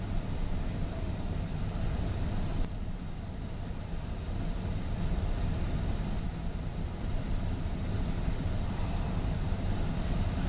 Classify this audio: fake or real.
real